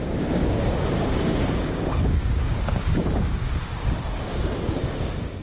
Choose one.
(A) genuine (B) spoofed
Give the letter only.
B